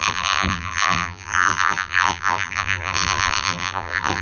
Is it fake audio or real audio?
fake